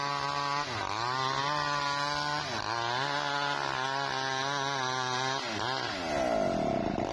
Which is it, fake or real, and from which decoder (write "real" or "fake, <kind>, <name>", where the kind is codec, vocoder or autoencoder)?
real